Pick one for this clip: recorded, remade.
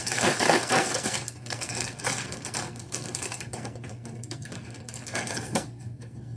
remade